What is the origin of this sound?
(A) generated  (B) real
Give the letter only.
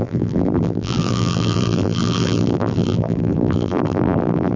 A